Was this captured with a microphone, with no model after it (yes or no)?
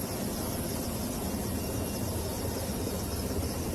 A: yes